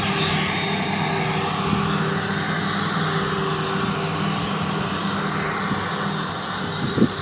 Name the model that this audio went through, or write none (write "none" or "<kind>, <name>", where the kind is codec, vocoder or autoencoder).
none